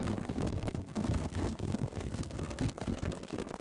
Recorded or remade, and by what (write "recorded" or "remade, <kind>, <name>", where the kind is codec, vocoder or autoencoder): remade, codec, SNAC